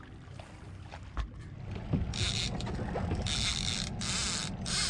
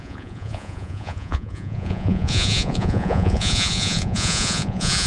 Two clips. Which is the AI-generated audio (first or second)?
second